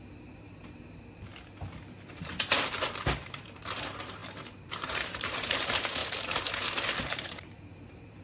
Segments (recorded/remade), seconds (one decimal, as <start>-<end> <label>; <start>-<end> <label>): 0.0-1.3 remade; 1.3-2.2 recorded; 2.2-6.0 remade; 6.0-7.0 recorded; 7.0-8.2 remade